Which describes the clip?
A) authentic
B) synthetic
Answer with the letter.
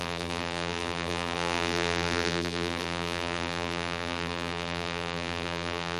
B